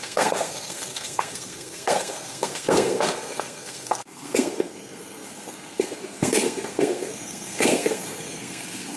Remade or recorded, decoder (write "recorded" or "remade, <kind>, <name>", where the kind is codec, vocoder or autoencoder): remade, codec, SNAC